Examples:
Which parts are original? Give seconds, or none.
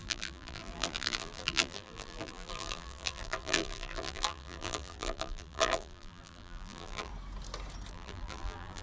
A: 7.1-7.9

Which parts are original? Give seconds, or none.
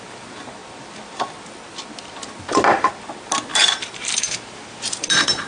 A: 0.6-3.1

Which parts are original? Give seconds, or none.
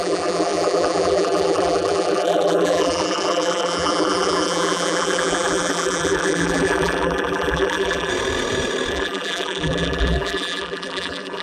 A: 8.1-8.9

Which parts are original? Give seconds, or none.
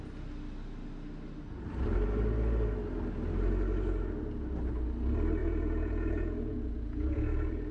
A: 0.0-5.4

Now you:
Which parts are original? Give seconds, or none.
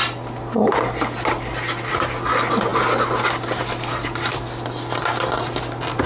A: 0.0-6.1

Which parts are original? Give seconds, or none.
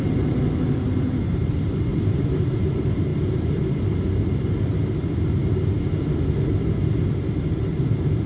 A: 0.0-1.9; 2.4-8.3